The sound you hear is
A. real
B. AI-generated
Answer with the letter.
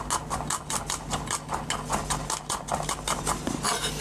A